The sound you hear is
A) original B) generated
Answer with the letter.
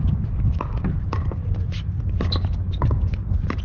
A